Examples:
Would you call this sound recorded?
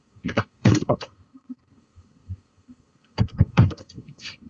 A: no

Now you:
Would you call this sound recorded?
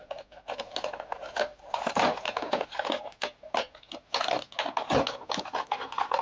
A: yes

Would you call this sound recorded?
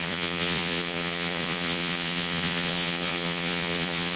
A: no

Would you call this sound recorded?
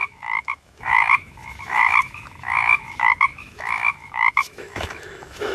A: no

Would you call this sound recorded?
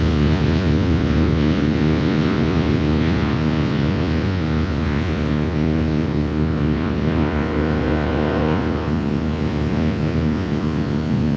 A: no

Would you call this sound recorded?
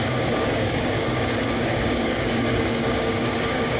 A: no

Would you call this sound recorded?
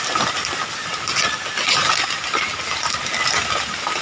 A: yes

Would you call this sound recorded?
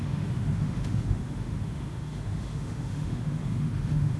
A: no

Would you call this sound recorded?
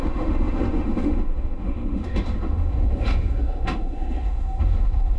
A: no